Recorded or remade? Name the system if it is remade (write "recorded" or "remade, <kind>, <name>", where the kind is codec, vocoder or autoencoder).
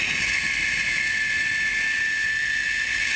recorded